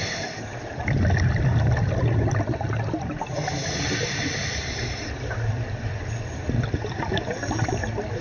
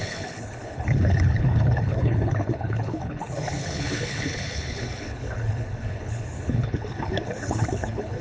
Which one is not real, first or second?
second